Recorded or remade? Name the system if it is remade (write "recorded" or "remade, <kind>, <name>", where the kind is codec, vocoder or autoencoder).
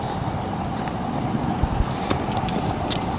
recorded